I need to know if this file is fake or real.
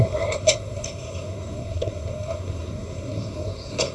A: fake